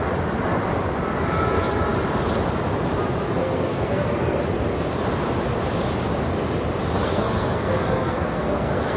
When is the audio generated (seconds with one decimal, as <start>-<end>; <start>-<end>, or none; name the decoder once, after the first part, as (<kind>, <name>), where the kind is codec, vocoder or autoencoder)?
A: 3.4-4.4 (codec, SNAC); 7.0-9.0